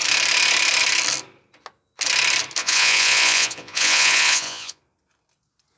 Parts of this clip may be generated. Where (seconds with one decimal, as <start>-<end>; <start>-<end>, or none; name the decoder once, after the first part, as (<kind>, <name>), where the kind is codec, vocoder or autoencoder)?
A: 2.6-4.8 (vocoder, Vocos)